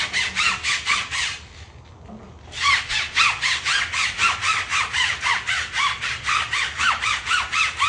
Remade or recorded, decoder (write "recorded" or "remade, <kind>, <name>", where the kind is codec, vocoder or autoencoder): recorded